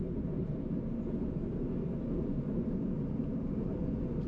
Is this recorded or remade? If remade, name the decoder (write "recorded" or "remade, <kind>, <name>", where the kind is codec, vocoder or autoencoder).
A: recorded